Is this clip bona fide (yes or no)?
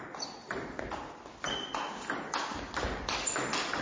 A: yes